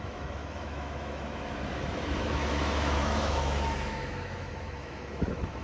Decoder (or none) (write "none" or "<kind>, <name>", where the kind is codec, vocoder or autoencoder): autoencoder, DAC-VAE